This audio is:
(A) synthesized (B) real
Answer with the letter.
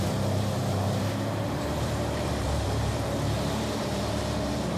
A